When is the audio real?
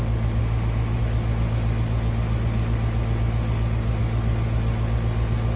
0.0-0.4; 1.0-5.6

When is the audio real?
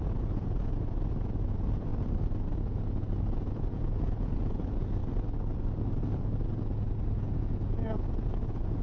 1.9-2.5; 5.0-6.0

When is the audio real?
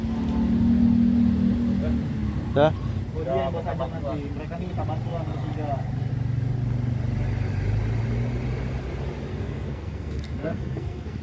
0.0-9.3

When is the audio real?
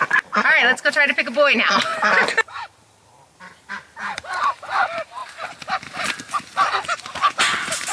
5.2-7.4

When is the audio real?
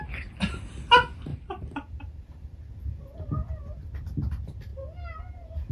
0.0-1.3; 2.6-5.7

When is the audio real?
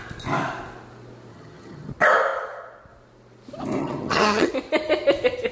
0.0-1.3; 1.9-3.8; 4.5-5.5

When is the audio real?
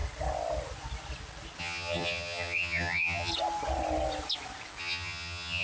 0.0-1.6; 3.3-4.8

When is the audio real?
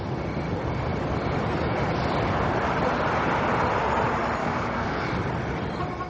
0.0-4.4; 5.1-6.1